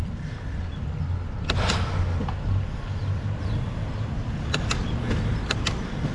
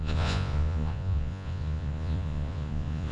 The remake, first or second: second